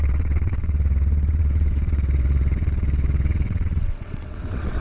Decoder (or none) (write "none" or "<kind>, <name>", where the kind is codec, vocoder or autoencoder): vocoder, WaveNeXt